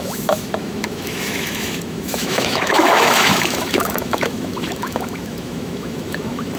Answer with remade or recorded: remade